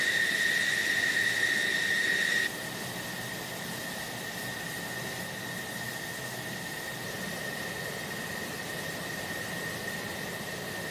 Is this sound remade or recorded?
recorded